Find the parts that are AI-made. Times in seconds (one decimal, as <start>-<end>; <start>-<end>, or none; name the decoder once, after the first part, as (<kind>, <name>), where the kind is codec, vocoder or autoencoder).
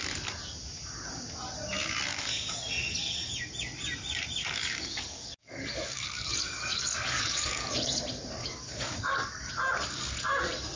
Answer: 2.1-2.7 (codec, DAC); 4.4-8.0; 8.4-9.5